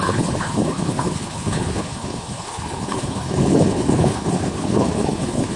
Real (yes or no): no